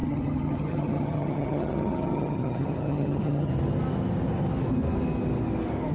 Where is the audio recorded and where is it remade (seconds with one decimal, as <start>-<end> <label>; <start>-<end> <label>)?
0.0-3.5 remade; 3.5-5.9 recorded